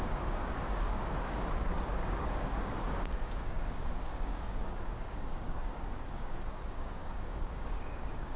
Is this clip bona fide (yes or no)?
no